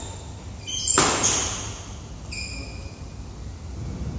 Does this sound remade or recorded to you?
recorded